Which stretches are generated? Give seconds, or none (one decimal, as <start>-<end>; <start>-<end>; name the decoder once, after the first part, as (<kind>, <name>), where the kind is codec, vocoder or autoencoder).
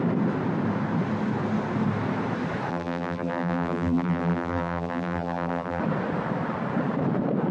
2.7-5.8 (vocoder, BigVGAN v2)